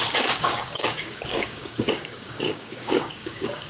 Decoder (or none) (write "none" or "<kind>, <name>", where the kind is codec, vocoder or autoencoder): codec, DAC